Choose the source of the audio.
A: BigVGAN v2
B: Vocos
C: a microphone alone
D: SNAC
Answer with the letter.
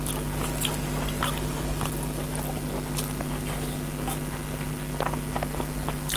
C